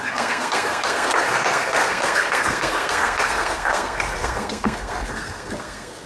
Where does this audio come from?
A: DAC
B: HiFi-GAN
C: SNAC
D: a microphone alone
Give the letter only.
C